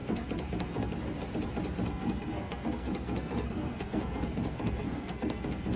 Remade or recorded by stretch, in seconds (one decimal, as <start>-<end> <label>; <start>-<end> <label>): 0.0-0.9 remade; 0.9-1.9 recorded; 1.9-5.8 remade